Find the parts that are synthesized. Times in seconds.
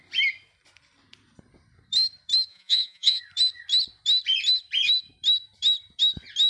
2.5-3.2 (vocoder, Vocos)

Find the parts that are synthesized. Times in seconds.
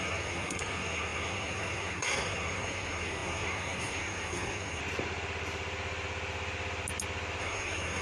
0.0-4.8 (codec, SNAC); 7.4-8.0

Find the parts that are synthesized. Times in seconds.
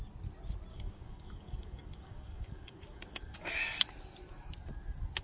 0.7-3.8 (codec, DAC)